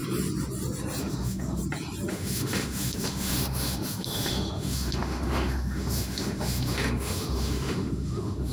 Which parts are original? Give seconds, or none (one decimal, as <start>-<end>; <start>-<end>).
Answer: 0.0-1.0; 1.6-2.1